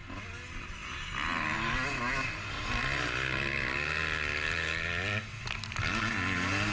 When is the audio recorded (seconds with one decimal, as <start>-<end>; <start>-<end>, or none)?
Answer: 0.0-6.7